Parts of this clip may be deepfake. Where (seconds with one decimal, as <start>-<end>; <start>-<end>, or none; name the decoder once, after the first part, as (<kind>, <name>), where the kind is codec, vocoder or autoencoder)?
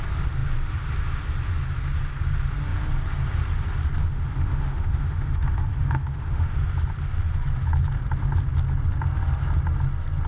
4.0-6.6 (autoencoder, DAC-VAE)